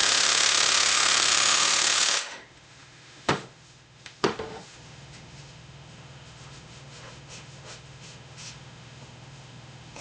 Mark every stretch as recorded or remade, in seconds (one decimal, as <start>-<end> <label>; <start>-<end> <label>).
0.0-10.0 remade